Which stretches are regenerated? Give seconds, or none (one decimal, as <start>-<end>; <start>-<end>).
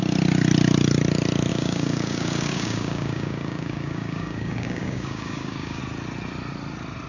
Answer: 1.5-5.8